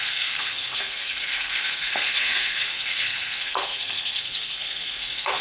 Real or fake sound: fake